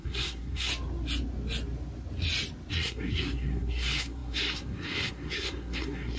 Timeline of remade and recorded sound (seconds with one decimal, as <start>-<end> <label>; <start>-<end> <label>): 0.0-0.7 remade; 0.7-2.7 recorded; 2.7-6.2 remade